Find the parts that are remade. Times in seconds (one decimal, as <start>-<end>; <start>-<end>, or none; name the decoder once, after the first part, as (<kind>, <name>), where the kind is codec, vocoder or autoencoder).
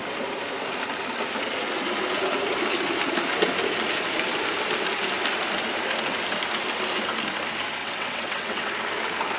7.8-8.7 (vocoder, WaveNeXt)